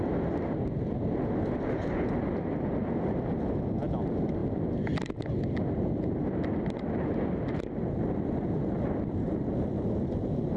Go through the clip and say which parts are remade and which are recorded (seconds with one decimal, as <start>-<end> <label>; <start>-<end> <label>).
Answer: 0.0-10.6 recorded